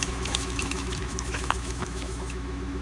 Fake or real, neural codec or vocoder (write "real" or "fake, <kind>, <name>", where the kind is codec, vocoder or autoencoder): fake, autoencoder, DAC-VAE